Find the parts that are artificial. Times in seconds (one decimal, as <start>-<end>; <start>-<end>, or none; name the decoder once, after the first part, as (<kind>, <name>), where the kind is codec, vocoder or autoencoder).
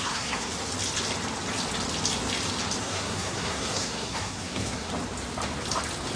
0.0-0.5 (codec, SNAC); 2.8-4.9